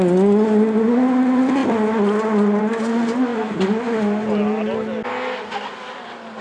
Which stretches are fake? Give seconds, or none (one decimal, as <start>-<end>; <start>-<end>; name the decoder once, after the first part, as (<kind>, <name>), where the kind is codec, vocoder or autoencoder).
none